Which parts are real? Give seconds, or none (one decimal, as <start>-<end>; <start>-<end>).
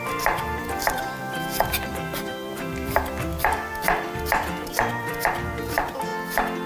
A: 6.1-6.7